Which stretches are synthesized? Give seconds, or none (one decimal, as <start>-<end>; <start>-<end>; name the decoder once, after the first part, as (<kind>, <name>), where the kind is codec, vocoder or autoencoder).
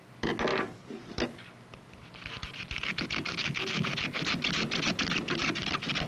0.5-1.0 (codec, DAC)